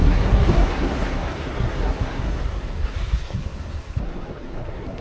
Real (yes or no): no